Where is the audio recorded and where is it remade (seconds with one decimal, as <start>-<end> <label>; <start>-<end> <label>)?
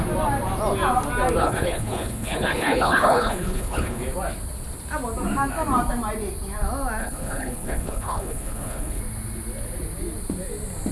0.0-1.4 recorded; 1.4-4.0 remade; 4.0-7.0 recorded; 7.0-9.0 remade; 9.0-10.9 recorded